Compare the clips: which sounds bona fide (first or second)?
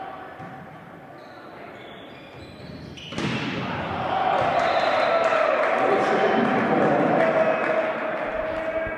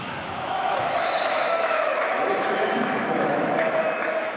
first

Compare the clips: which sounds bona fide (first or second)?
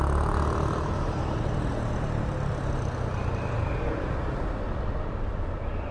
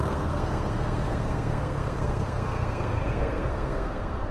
first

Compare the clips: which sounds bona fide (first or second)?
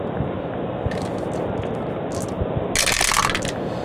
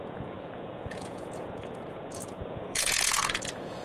first